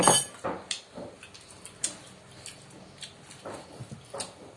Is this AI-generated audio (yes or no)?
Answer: no